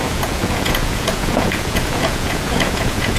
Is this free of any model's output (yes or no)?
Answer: no